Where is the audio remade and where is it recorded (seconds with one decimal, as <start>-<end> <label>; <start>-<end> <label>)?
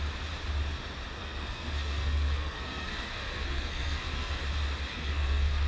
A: 0.0-1.2 recorded; 1.2-4.4 remade; 4.4-4.9 recorded; 4.9-5.7 remade